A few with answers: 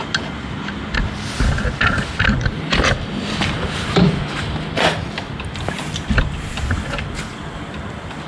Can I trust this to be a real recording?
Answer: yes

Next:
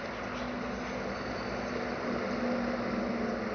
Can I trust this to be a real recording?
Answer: yes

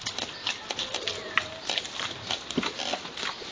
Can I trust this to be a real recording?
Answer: yes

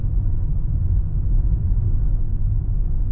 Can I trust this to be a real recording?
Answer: yes